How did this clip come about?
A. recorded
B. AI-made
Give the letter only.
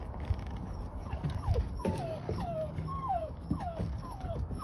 B